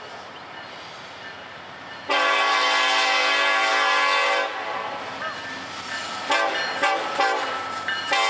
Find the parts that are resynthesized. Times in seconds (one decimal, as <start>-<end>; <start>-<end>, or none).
none